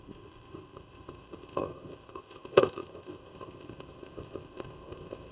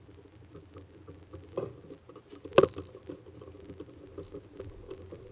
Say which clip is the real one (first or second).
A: second